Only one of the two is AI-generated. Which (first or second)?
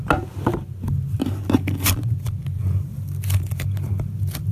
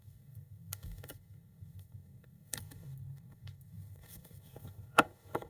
second